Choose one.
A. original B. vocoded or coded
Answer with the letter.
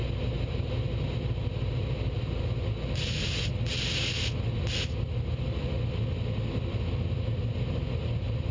A